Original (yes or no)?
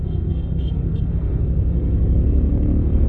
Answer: no